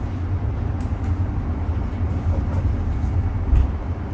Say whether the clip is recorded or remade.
recorded